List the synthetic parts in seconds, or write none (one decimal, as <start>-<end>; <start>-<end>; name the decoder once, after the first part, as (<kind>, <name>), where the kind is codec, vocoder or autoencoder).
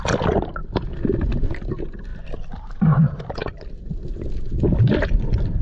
none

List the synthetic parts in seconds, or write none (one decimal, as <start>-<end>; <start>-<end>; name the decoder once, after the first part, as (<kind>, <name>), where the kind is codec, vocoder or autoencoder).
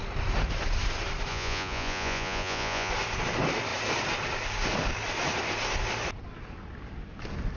1.3-2.9 (vocoder, Vocos)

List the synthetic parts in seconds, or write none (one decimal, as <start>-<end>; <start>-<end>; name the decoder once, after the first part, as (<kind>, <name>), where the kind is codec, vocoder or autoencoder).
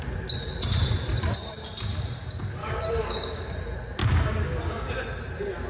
2.6-3.5 (codec, DAC); 4.0-4.9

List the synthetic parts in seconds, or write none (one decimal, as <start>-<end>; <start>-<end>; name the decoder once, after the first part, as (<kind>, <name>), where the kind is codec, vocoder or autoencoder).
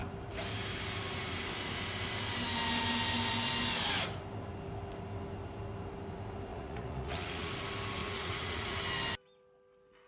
6.5-7.5 (vocoder, Vocos); 8.0-8.8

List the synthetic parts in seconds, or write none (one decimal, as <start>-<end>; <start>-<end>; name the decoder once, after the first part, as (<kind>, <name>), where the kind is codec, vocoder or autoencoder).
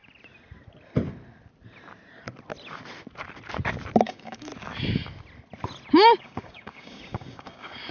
4.0-4.5 (codec, DAC); 6.2-7.9